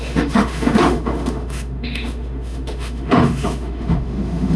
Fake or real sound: fake